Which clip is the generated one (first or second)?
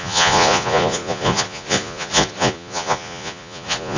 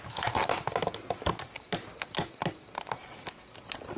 first